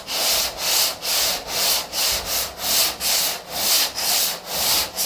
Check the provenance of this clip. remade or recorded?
recorded